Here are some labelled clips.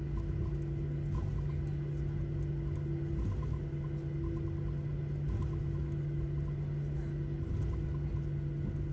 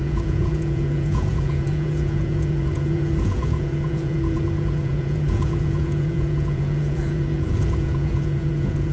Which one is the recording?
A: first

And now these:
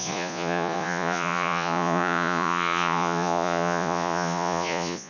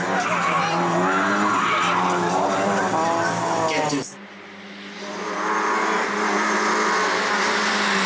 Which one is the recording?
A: second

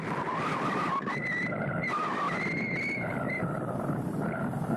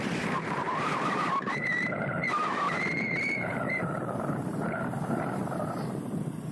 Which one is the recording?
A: first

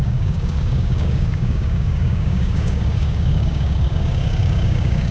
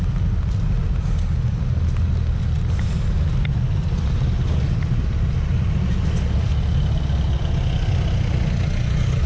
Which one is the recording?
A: second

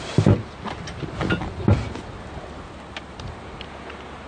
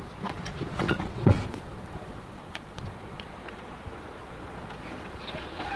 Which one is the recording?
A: first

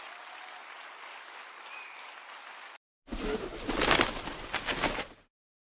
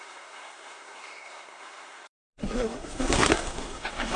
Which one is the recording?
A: first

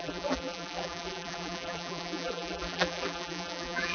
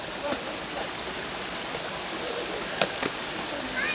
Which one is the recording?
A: second